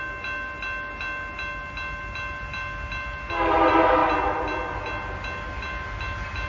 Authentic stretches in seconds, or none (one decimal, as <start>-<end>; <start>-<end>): 0.0-6.5

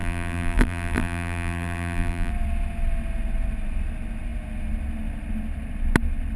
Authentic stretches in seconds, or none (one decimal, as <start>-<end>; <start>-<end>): 2.3-6.4

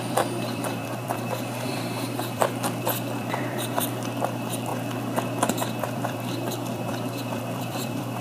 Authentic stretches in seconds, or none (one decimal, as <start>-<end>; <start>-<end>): 4.7-5.5

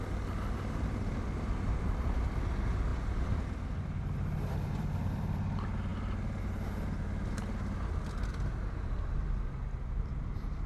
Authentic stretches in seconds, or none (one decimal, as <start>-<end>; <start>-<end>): 0.0-10.7

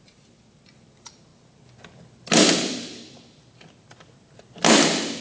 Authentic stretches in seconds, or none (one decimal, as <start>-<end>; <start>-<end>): 0.0-5.2